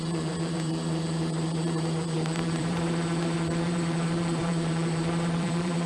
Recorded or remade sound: remade